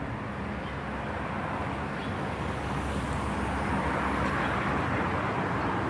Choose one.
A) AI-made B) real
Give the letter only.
B